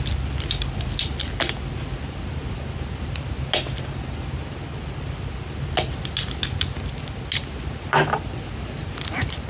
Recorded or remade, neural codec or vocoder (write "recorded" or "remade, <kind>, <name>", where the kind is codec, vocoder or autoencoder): recorded